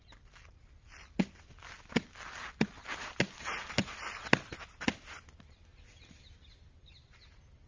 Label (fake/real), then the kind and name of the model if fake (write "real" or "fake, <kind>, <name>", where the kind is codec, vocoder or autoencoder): real